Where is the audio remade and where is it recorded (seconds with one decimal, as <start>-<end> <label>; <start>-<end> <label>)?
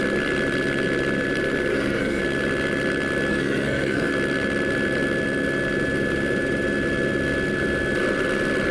0.0-1.7 recorded; 1.7-2.2 remade; 2.2-3.3 recorded; 3.3-4.1 remade; 4.1-8.7 recorded